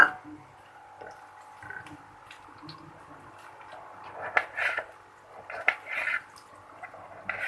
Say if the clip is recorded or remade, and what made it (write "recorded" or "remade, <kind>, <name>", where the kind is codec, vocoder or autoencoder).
recorded